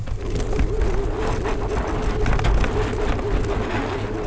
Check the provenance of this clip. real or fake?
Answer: real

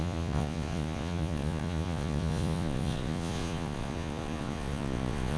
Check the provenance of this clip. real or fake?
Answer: fake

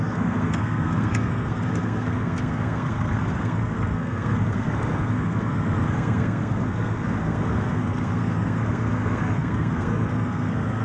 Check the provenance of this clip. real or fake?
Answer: fake